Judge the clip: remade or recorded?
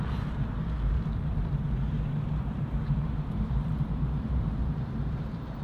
remade